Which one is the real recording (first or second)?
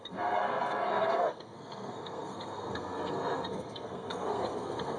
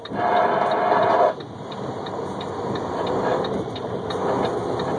second